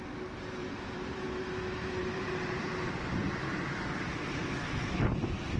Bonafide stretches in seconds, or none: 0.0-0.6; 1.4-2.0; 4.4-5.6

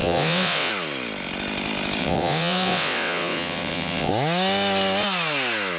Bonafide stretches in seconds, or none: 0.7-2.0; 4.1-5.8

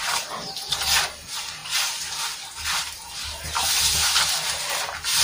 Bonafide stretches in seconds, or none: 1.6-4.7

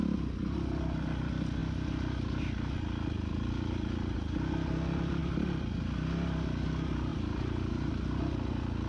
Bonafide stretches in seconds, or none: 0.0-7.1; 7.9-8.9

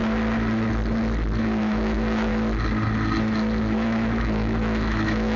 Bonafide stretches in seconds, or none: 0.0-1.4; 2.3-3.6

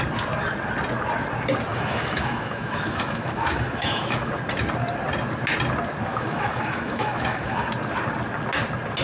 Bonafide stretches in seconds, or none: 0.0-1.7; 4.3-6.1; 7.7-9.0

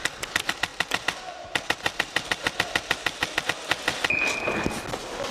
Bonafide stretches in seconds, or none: 0.0-0.7; 2.5-5.3

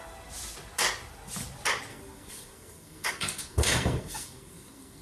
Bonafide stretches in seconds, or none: 0.0-1.9